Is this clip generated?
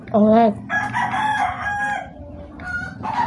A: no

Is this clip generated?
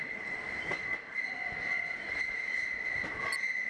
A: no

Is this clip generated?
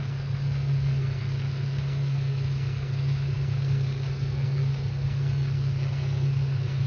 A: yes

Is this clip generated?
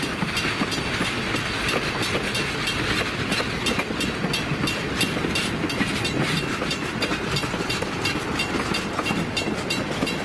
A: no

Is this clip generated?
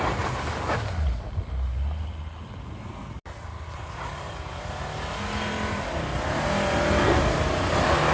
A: no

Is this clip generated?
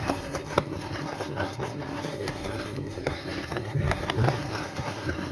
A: yes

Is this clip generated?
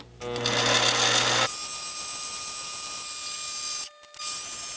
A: no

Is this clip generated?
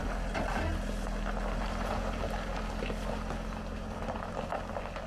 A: no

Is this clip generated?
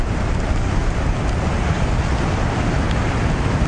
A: no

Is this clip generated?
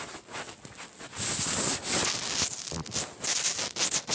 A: no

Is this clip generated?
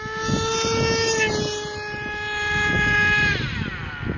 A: no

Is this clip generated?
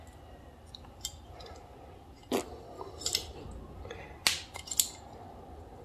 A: no